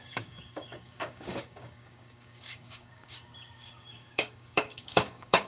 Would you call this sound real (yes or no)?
no